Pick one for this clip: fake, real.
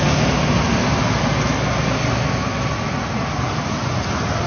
real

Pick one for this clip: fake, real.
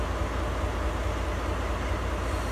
real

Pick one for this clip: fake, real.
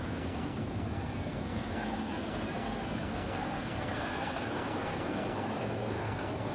fake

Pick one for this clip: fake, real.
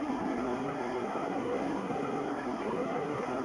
fake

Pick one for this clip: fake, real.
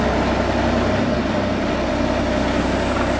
real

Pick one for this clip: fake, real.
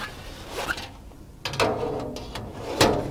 real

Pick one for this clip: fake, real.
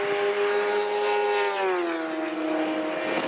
real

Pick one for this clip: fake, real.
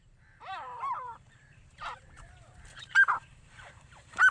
fake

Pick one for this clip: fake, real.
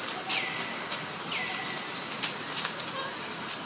real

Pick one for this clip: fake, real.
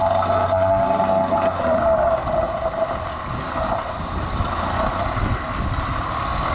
real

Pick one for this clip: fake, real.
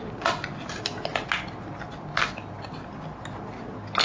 real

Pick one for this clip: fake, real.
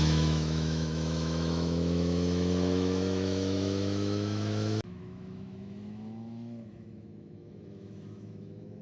fake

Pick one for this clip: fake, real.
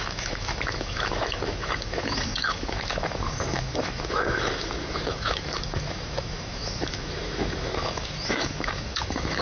fake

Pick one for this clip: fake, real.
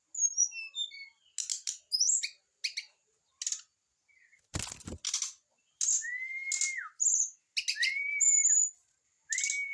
real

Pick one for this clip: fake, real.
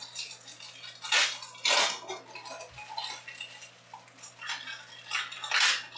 real